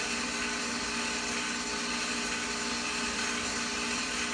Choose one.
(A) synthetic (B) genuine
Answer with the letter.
B